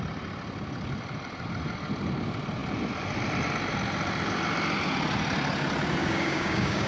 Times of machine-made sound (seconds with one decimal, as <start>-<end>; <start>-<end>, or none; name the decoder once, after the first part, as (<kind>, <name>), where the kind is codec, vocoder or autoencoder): 6.0-6.9 (codec, DAC)